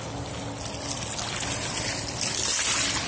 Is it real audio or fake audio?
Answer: real